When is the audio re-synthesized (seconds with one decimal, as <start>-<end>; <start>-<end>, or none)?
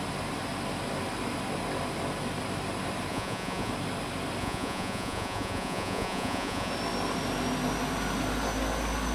3.1-3.7; 4.4-6.7